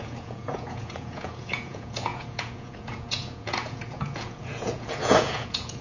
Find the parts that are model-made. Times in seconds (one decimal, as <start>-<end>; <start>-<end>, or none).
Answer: 0.0-5.8